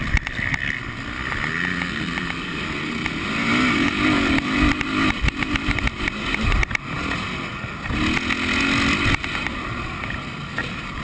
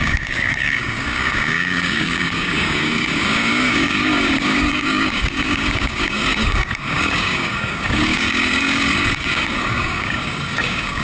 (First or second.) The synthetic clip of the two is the second